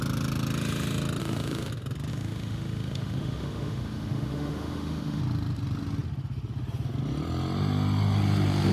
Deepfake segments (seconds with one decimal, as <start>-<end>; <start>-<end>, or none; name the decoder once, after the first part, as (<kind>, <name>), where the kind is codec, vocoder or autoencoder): 1.2-1.7 (autoencoder, DAC-VAE); 2.1-5.2

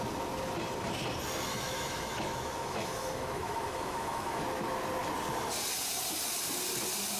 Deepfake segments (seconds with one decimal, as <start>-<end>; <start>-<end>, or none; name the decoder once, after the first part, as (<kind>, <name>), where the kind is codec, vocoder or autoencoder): 1.5-4.4 (autoencoder, DAC-VAE)

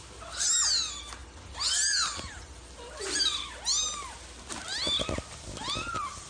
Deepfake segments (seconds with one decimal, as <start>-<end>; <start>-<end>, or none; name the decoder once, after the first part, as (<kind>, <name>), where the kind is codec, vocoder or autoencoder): none

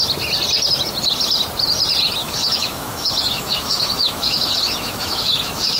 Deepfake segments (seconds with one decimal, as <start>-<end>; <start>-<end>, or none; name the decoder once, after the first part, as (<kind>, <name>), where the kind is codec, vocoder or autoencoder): 2.2-5.8 (autoencoder, DAC-VAE)

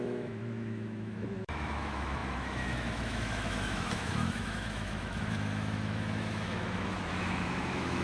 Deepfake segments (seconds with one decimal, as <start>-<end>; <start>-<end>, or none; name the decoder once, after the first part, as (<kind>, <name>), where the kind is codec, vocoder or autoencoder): 0.0-8.0 (autoencoder, DAC-VAE)

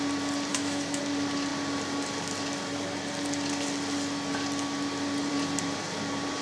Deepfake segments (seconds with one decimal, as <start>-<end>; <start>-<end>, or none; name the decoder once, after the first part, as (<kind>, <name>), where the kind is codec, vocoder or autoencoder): 0.5-1.0 (autoencoder, DAC-VAE)